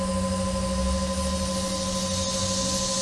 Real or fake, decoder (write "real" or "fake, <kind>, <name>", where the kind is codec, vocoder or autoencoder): real